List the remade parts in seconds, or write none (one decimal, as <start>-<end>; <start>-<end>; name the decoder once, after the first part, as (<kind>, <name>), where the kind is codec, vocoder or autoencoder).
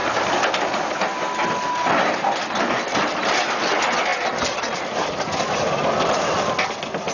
none